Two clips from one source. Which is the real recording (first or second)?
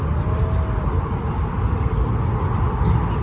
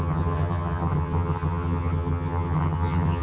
first